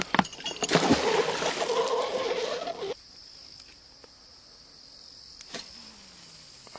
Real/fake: real